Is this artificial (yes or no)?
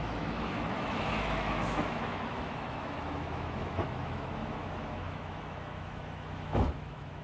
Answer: yes